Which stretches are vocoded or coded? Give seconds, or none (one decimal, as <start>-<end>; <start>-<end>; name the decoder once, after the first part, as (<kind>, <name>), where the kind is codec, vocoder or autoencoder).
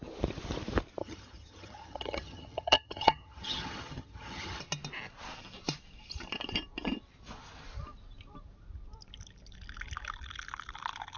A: 1.0-4.6 (vocoder, HiFi-GAN)